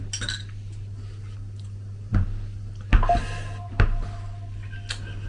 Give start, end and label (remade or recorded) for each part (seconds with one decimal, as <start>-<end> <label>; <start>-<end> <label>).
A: 0.0-5.3 recorded